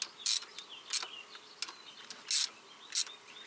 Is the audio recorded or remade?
recorded